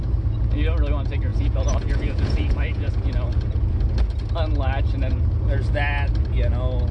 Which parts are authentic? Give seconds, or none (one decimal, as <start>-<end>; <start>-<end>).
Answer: 0.0-1.3; 2.9-6.9